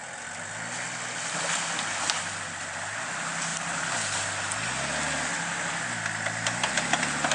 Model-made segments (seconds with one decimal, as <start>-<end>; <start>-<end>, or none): none